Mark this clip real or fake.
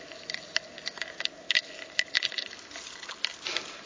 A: real